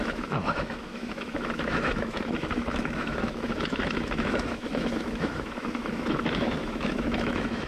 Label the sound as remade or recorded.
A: remade